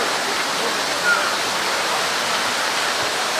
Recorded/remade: recorded